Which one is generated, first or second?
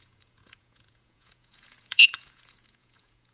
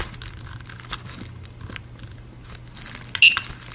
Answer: first